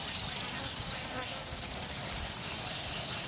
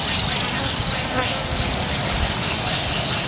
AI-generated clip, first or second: first